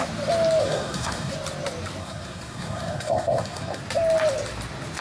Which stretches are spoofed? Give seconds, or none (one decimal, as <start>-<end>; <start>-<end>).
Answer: 0.6-1.3; 2.0-3.8